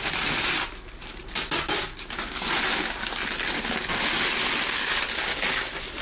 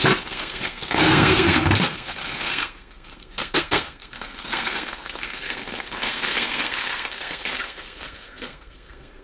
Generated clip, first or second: second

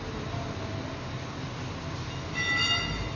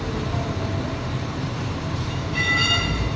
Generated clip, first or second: second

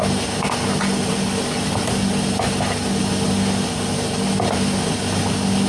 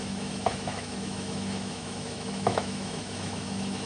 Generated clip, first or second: second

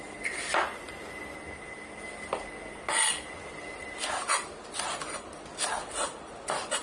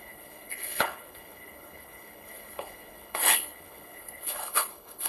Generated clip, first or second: second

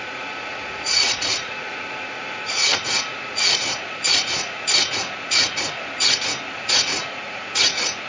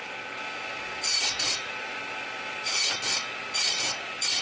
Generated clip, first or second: first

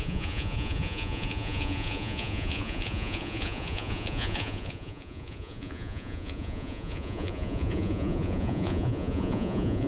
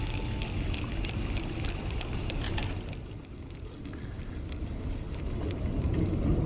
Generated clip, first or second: first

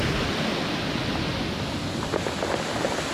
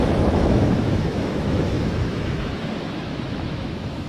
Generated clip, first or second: second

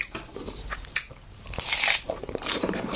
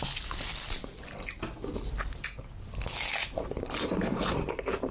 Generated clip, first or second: first